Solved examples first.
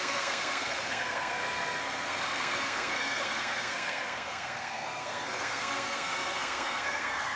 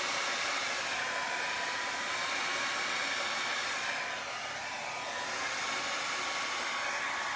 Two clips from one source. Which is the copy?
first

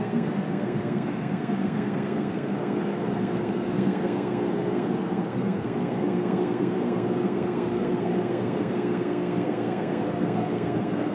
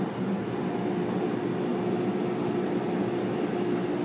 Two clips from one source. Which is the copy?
first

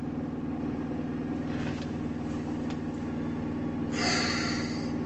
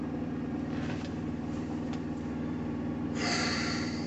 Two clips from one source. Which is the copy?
second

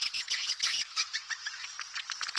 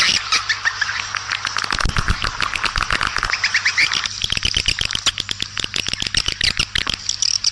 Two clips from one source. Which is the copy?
first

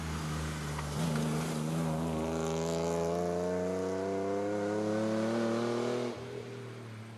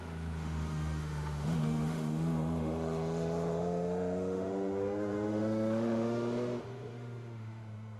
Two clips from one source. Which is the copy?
second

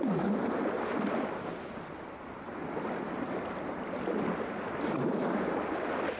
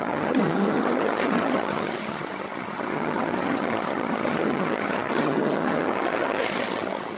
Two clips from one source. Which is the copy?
second